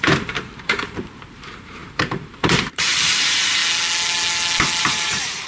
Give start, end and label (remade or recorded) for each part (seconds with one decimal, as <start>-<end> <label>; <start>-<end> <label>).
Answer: 0.0-3.6 remade; 3.6-4.8 recorded; 4.8-5.5 remade